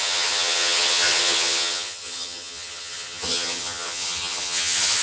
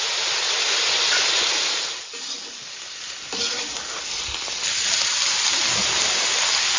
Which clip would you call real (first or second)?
second